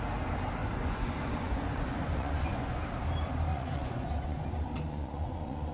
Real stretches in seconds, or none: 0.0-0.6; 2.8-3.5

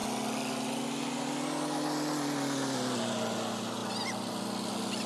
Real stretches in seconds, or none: 0.0-5.1

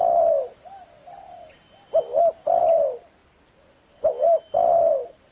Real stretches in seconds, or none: 0.0-5.3

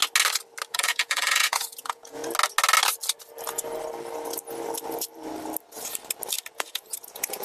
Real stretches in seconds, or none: 0.0-0.7; 2.2-6.5

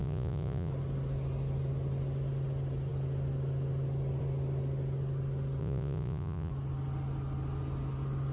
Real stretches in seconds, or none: 0.7-5.6; 6.5-8.3

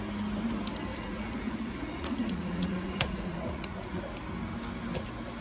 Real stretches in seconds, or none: 0.0-0.9; 4.0-5.4